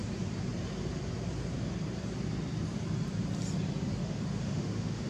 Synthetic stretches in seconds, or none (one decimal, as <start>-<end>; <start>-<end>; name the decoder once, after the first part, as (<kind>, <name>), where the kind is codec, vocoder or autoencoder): 4.0-5.1 (autoencoder, DAC-VAE)